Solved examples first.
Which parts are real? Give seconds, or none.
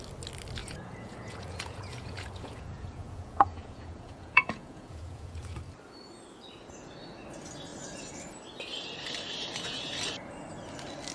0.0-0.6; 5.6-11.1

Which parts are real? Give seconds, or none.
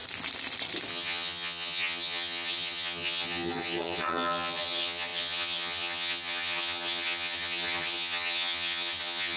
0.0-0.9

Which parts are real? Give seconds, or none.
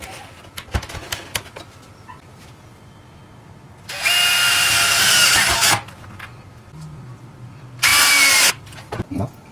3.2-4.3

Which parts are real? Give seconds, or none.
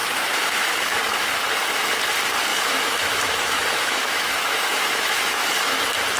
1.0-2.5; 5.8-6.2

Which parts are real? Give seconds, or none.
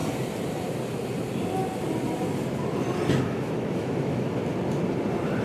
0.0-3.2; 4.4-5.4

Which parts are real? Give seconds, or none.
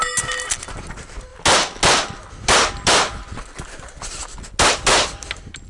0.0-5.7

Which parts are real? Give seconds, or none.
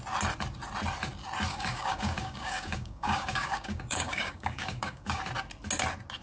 0.0-1.5; 5.2-6.2